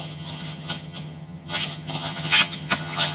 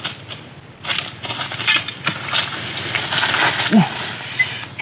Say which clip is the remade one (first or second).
first